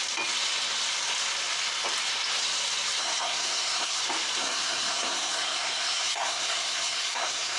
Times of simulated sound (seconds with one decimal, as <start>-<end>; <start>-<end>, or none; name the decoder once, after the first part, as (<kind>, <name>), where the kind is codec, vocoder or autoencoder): 3.0-4.0 (codec, SNAC); 4.4-7.6